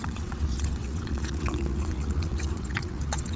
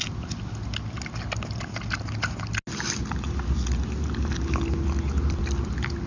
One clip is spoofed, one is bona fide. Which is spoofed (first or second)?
first